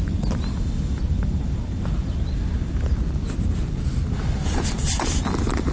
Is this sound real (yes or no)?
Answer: yes